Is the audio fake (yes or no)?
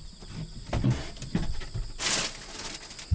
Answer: no